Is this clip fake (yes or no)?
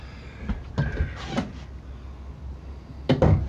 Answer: no